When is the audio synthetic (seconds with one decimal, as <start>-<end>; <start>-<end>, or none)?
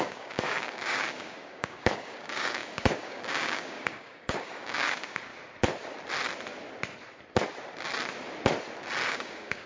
0.0-5.3; 9.1-9.7